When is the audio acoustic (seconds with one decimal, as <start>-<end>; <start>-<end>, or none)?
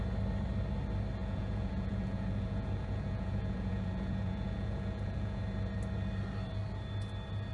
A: 0.0-1.2; 5.4-7.5